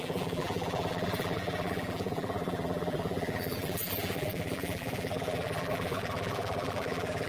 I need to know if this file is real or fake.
fake